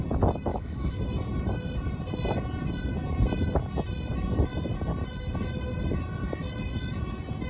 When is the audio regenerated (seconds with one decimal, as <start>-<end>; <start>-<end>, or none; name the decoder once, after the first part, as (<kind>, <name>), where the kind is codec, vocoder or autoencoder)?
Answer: 0.5-1.0 (autoencoder, DAC-VAE)